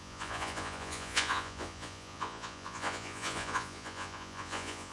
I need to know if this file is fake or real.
fake